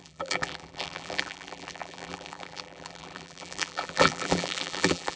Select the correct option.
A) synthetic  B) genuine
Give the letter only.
A